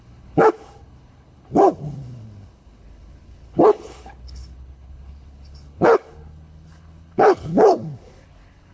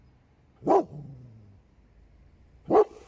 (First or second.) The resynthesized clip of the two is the first